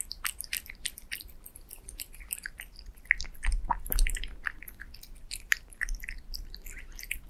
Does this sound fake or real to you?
real